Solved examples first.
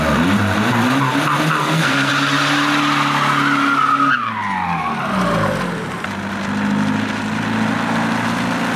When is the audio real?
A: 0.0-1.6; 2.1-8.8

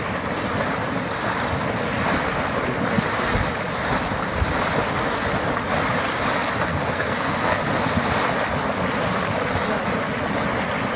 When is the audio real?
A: 0.0-6.7; 7.6-11.0

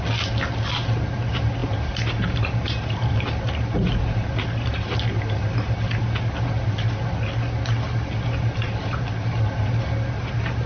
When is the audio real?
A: 0.0-10.7

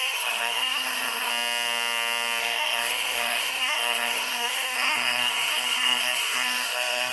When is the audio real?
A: 1.3-2.4

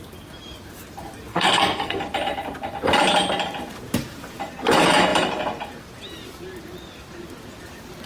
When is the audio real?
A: 0.0-1.3; 2.0-8.1

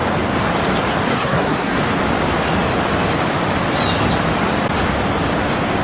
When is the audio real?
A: 0.0-1.1; 1.8-5.8